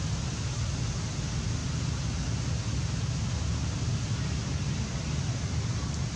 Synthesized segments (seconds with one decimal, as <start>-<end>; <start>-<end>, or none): none